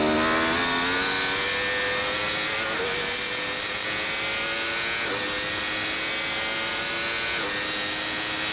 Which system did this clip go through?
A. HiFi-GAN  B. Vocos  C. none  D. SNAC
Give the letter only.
C